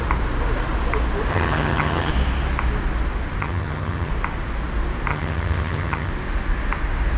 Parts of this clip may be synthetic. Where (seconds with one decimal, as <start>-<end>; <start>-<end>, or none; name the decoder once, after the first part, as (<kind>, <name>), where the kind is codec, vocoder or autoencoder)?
1.3-2.1 (vocoder, HiFi-GAN); 3.4-4.1; 5.1-6.1